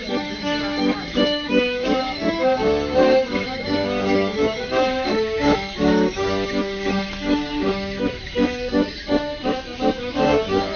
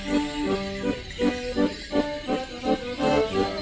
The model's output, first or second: first